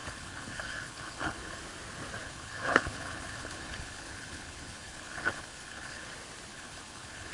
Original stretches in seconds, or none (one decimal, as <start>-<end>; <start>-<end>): 1.6-2.2; 6.1-6.5